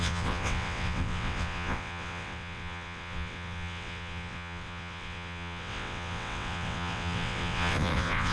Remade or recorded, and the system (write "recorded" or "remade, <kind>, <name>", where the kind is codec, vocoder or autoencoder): remade, vocoder, WaveNeXt